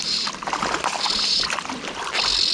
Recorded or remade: recorded